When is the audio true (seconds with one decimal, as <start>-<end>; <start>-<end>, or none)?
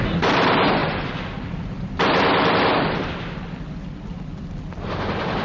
0.0-5.4